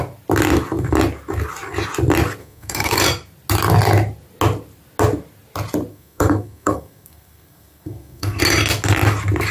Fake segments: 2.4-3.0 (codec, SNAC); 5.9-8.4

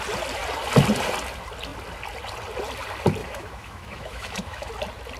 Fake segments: 3.2-4.7 (autoencoder, DAC-VAE)

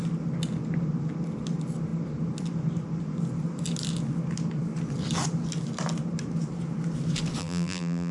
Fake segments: 7.4-8.1 (vocoder, BigVGAN v2)

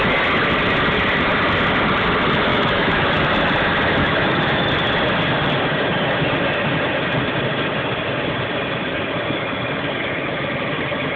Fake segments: 2.5-3.2 (autoencoder, DAC-VAE); 4.0-4.7

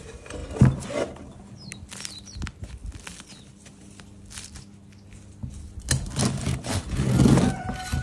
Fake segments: none

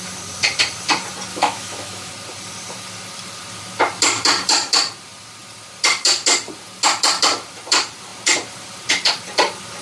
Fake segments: 1.3-2.1 (autoencoder, DAC-VAE)

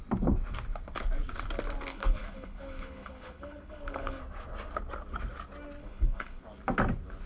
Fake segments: 1.9-4.2 (codec, HILCodec); 5.8-6.4